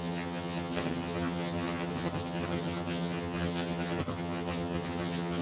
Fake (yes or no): yes